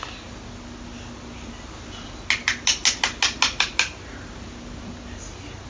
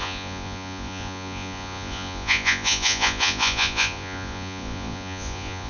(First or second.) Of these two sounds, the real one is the first